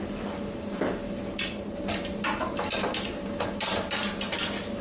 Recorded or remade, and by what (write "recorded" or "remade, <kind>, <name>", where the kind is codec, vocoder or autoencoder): recorded